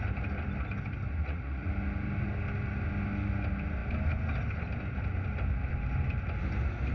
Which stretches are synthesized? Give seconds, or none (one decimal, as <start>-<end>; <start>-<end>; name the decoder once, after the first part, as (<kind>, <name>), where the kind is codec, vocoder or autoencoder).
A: 1.2-1.7 (vocoder, Vocos)